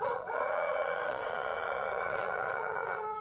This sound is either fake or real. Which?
fake